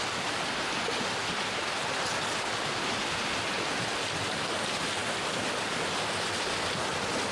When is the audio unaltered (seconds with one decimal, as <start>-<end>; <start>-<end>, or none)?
0.0-7.3